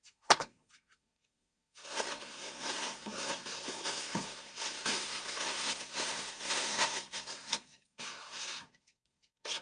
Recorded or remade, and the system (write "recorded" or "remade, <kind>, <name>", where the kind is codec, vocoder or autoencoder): remade, codec, SNAC